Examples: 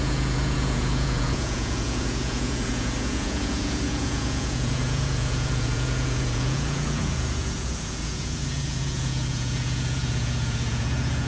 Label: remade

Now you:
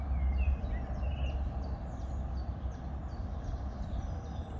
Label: recorded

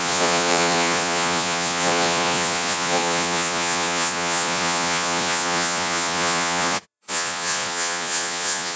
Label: remade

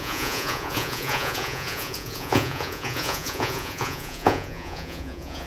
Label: remade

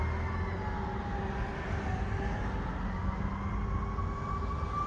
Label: recorded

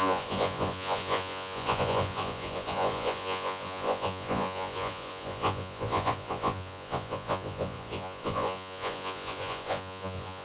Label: remade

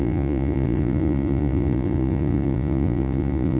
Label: remade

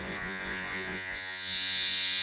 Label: remade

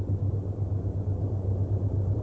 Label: recorded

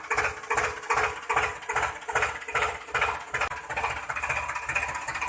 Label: recorded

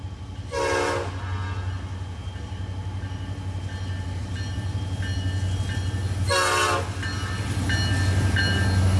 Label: recorded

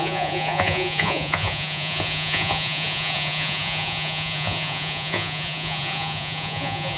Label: remade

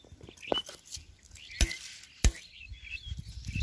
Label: recorded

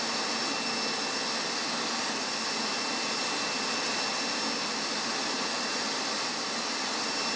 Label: recorded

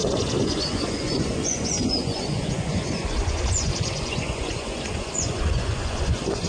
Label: remade